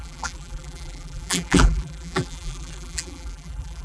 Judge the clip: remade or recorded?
remade